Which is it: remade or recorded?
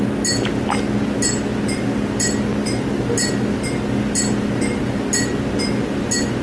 recorded